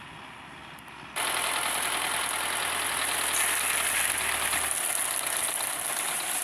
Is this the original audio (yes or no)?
yes